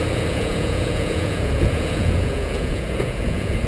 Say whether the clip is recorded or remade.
remade